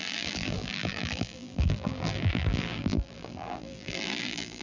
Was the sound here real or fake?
fake